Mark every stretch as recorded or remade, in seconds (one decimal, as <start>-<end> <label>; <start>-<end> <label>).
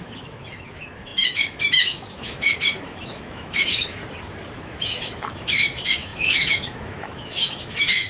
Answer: 0.0-4.0 remade; 4.0-4.6 recorded; 4.6-8.1 remade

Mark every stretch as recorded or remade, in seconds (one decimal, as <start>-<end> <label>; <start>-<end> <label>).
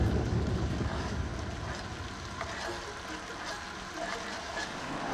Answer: 0.0-1.3 remade; 1.3-4.4 recorded; 4.4-5.1 remade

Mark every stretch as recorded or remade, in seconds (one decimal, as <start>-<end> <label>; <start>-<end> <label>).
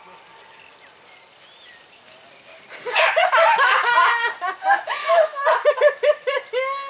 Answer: 0.0-3.2 recorded; 3.2-3.9 remade; 3.9-5.0 recorded; 5.0-5.8 remade; 5.8-6.9 recorded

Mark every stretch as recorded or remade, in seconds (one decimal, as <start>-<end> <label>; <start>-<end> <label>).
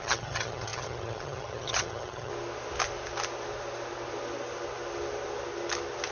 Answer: 0.0-2.3 remade; 2.3-6.1 recorded